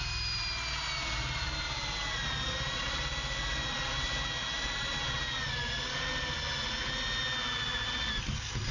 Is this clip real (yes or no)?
yes